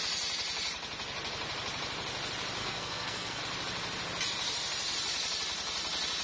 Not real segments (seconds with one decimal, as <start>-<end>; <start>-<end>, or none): 2.6-3.4